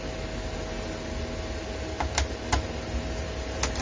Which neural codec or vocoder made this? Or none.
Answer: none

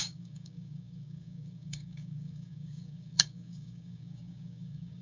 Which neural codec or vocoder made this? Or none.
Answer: codec, DAC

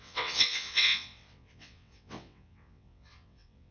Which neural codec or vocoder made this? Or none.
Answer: vocoder, WaveNeXt